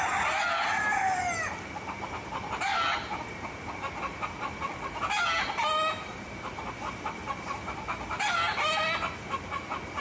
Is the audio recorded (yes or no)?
yes